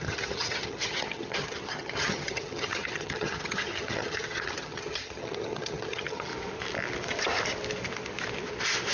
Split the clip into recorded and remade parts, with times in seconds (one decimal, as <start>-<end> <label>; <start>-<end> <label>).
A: 0.0-6.3 remade; 6.3-8.9 recorded